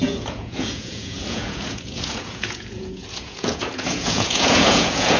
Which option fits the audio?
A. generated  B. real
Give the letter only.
A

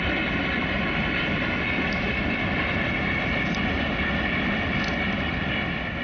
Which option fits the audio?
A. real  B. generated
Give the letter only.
A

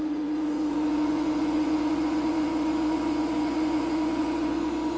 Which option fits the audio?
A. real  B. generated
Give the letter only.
B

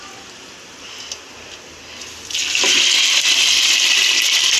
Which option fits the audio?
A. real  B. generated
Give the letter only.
A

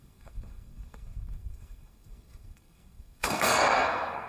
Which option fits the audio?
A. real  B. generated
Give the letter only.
B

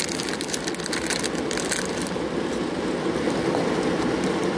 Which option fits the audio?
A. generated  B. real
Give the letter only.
B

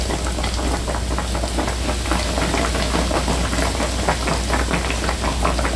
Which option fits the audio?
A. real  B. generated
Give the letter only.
A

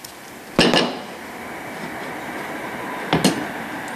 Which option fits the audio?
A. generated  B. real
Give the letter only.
B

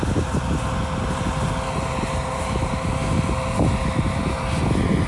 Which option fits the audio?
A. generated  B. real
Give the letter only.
B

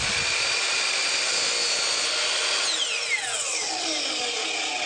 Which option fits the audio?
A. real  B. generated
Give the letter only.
A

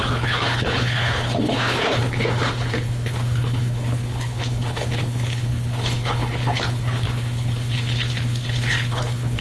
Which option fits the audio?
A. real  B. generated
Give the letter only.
B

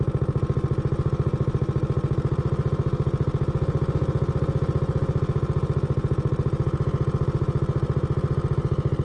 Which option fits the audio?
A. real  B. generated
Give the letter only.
A